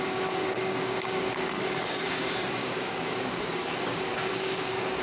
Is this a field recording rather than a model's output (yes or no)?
no